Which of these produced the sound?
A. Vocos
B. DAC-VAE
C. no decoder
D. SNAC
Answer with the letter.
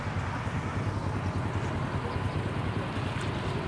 C